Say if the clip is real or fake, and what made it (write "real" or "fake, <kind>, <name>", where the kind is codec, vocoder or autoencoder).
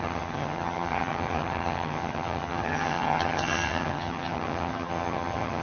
fake, vocoder, HiFi-GAN